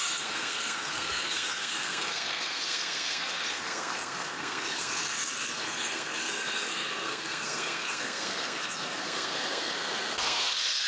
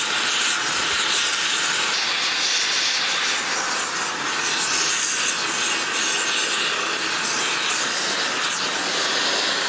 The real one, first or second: second